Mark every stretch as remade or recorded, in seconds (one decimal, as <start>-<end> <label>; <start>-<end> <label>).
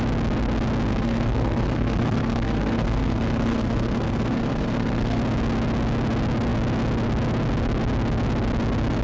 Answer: 0.0-0.9 recorded; 0.9-5.2 remade; 5.2-9.0 recorded